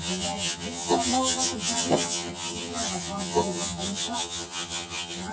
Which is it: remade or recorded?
remade